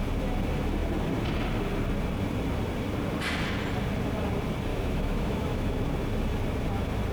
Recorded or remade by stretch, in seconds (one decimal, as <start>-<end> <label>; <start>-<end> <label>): 0.0-4.7 recorded; 4.7-5.8 remade; 5.8-7.1 recorded